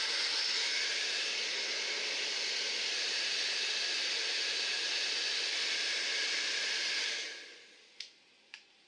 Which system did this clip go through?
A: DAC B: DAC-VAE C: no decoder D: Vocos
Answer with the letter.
C